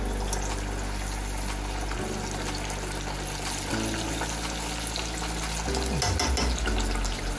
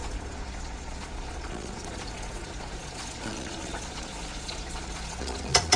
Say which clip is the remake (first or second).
second